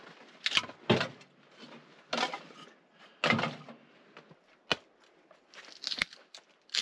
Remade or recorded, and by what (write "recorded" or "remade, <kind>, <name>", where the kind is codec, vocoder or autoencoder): recorded